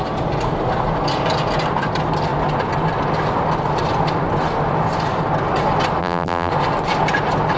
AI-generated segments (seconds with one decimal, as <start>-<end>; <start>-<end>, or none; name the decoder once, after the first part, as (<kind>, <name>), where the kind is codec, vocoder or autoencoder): 6.0-6.5 (vocoder, BigVGAN v2)